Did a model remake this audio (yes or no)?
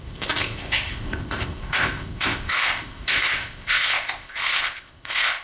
yes